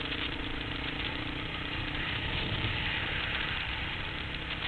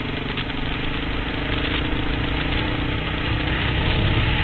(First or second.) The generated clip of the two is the first